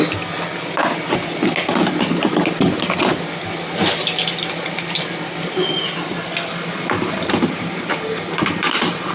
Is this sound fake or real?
real